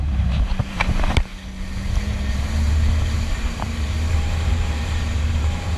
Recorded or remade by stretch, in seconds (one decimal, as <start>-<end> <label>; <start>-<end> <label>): 0.0-1.3 remade; 1.3-2.3 recorded; 2.3-5.8 remade

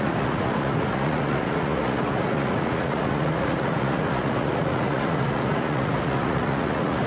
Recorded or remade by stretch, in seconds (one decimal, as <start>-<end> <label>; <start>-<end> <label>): 0.0-7.1 remade

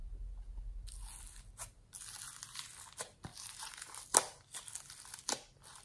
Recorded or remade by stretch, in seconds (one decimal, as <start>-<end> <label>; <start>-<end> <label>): 0.0-3.3 recorded; 3.3-4.0 remade; 4.0-5.8 recorded

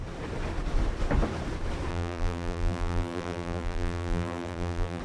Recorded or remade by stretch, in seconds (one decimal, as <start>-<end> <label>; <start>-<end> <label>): 0.0-1.9 recorded; 1.9-5.0 remade

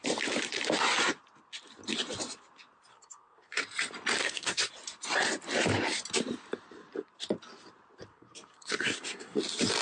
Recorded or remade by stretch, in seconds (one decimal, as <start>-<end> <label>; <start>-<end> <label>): 0.0-2.9 recorded; 2.9-3.6 remade; 3.6-4.2 recorded; 4.2-4.7 remade; 4.7-8.1 recorded; 8.1-9.4 remade; 9.4-9.8 recorded

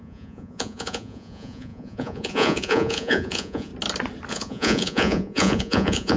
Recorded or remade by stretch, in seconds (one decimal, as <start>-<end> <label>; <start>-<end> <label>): 0.0-3.7 remade; 3.7-4.3 recorded; 4.3-6.2 remade

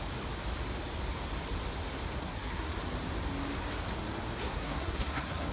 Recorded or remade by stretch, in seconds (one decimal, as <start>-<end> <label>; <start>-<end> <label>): 0.0-2.2 recorded; 2.2-2.7 remade; 2.7-4.4 recorded; 4.4-5.5 remade

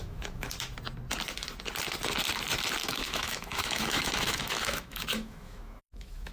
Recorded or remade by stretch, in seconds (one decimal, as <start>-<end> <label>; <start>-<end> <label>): 0.0-0.5 remade; 0.5-2.8 recorded; 2.8-6.3 remade